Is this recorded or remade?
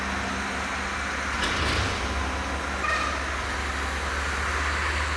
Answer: recorded